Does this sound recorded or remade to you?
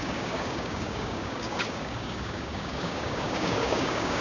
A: remade